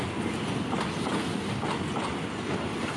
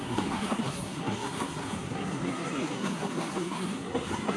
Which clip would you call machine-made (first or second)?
second